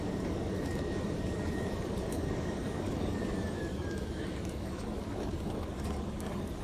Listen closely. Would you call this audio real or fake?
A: fake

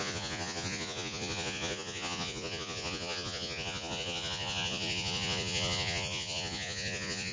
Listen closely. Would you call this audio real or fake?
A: fake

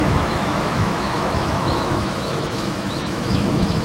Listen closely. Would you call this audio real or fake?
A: fake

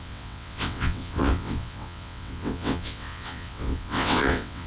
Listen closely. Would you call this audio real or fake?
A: fake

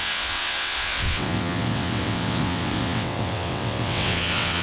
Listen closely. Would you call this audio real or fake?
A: fake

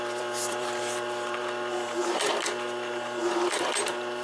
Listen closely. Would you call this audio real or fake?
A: fake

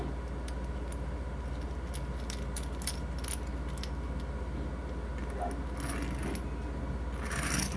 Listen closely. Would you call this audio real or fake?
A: real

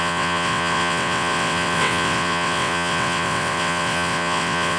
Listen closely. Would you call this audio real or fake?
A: fake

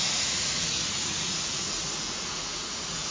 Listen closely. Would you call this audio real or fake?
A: fake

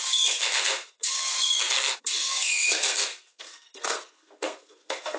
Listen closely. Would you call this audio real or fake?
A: fake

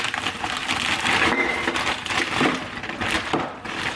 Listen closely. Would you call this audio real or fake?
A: fake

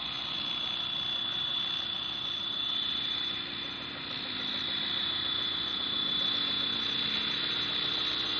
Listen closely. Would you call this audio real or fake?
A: real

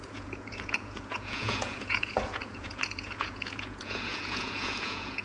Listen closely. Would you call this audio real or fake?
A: fake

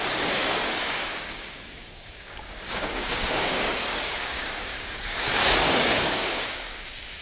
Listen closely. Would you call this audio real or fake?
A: fake